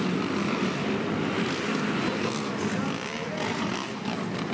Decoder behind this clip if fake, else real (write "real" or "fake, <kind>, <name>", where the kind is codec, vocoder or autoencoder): real